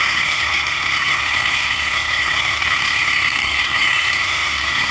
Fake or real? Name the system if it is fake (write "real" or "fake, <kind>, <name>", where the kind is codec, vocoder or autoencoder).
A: fake, codec, SNAC